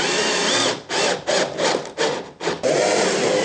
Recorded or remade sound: recorded